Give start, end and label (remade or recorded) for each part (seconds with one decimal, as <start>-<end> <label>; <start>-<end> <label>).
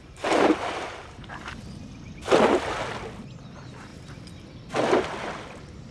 0.0-1.6 remade; 1.6-5.9 recorded